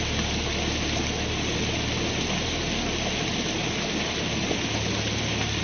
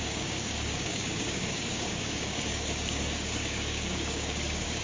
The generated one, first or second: second